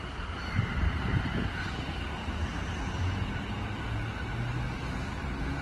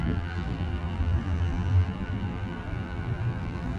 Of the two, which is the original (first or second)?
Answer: first